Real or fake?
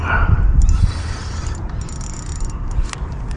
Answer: real